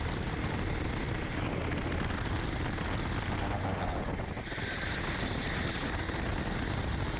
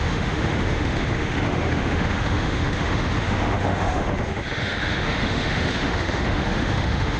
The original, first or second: first